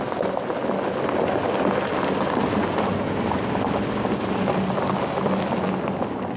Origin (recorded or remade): recorded